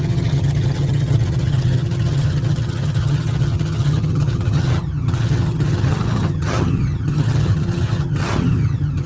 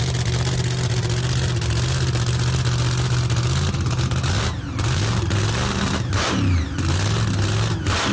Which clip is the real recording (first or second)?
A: second